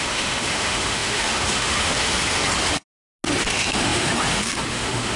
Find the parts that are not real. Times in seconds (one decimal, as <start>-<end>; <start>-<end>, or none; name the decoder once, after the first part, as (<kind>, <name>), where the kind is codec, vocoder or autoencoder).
0.0-2.4 (autoencoder, DAC-VAE); 3.4-5.2